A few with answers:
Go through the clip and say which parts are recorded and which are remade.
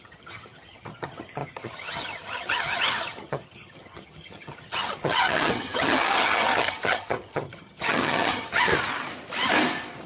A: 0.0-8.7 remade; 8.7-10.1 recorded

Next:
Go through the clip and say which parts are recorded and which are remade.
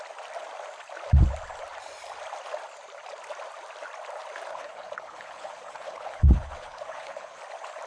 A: 0.0-4.5 recorded; 4.5-7.4 remade; 7.4-7.9 recorded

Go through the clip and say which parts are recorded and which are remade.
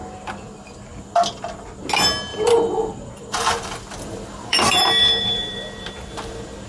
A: 0.0-2.3 recorded; 2.3-6.3 remade; 6.3-6.7 recorded